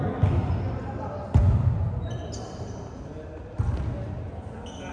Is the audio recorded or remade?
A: recorded